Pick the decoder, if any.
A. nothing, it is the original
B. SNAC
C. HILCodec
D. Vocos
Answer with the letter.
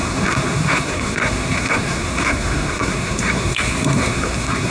B